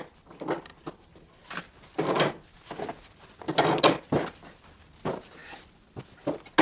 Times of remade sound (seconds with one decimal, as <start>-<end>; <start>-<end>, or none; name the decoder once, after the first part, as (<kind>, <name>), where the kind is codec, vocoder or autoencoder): 5.4-6.0 (vocoder, BigVGAN v2)